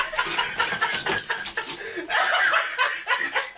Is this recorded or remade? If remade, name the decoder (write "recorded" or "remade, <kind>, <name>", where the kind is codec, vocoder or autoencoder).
recorded